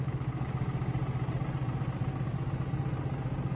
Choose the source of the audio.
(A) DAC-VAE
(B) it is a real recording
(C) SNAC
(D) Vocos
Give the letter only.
B